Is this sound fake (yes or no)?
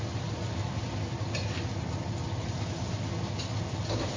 no